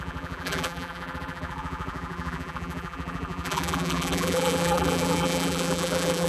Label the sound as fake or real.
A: fake